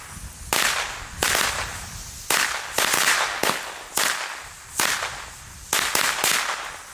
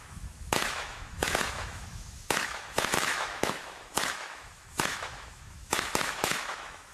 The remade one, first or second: second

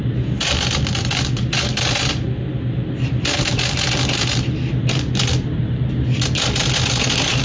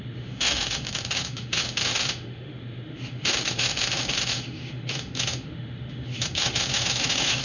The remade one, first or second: second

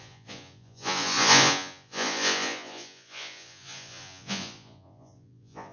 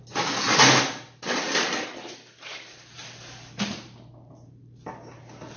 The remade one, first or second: first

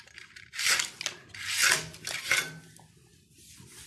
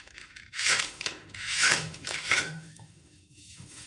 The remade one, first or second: second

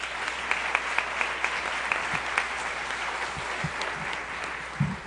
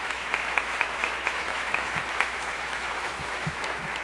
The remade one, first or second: second